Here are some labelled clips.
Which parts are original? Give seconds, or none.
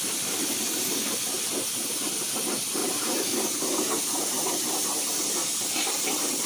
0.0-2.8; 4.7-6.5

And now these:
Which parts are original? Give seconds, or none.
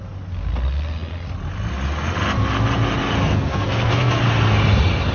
0.0-3.5; 4.2-5.1